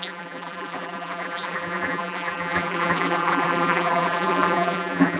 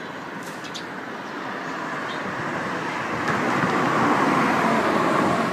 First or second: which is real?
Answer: second